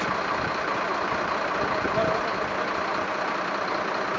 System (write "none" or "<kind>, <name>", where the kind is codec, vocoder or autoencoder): none